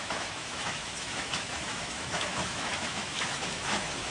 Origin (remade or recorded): remade